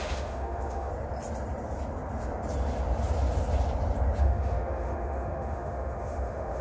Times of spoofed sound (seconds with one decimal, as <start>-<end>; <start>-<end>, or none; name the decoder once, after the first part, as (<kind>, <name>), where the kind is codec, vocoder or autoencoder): 0.0-0.9 (autoencoder, DAC-VAE); 4.2-6.6